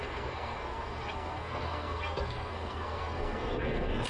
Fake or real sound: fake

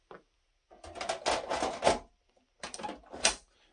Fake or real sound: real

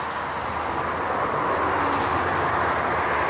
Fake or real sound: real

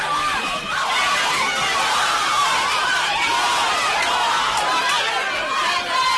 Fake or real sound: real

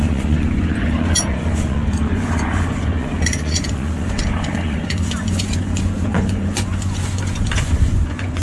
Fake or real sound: fake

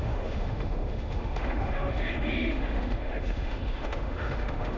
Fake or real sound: fake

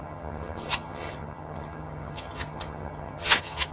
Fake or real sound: fake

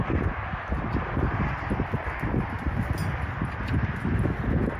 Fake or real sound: real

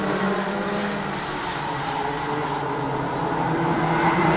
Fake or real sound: real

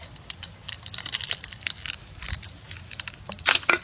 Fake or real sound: real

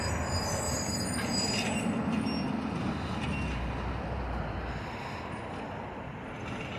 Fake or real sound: real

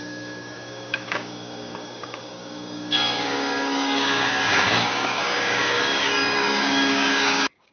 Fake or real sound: fake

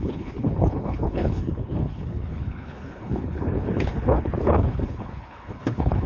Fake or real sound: fake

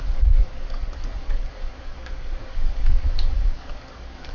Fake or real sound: fake